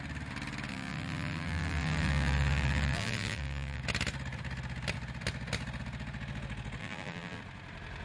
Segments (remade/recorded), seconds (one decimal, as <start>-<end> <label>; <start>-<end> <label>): 0.0-0.7 recorded; 0.7-3.8 remade; 3.8-6.8 recorded; 6.8-7.4 remade; 7.4-8.0 recorded